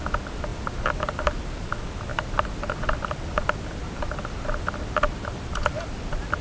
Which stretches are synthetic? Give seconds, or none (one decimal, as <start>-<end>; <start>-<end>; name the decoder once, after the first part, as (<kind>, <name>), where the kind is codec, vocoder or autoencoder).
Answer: none